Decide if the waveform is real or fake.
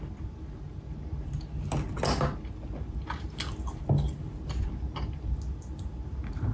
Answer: real